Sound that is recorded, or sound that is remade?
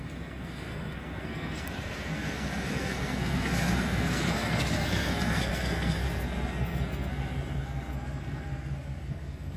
remade